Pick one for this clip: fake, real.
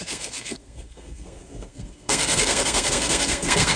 fake